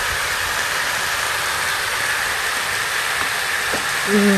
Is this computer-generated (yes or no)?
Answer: no